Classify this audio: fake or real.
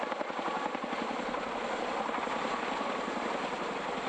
real